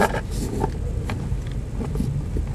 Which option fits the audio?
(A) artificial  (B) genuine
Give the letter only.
B